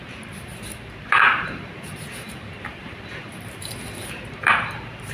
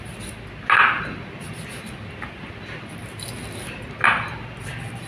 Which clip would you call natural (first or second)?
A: second